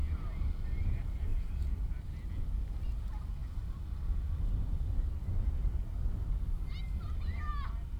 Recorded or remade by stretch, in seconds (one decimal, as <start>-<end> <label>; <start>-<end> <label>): 0.0-1.3 recorded; 1.3-2.1 remade; 2.1-8.0 recorded